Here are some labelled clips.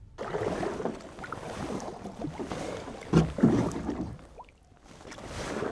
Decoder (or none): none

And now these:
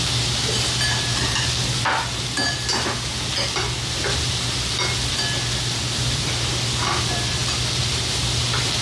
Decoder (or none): none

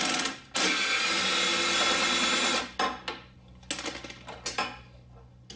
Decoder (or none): none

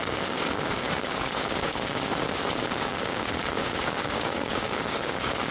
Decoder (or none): codec, DAC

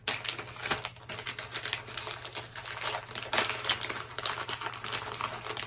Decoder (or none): none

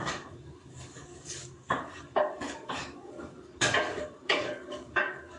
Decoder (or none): codec, DAC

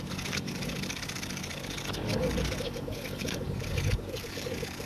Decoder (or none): codec, DAC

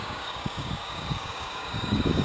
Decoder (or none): codec, DAC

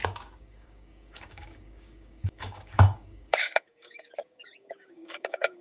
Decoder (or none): codec, DAC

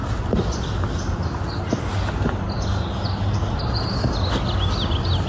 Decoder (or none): none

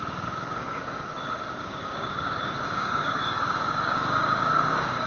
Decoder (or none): codec, DAC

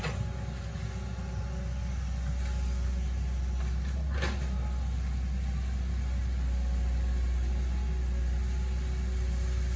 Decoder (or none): none